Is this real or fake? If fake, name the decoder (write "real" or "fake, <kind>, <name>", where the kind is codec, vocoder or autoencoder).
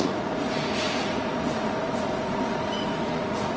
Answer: fake, vocoder, Vocos